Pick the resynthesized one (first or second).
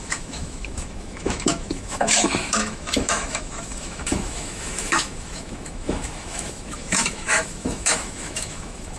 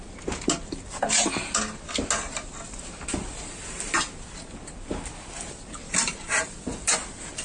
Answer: first